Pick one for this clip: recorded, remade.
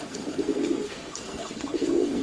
remade